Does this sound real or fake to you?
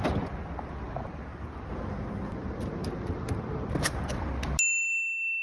real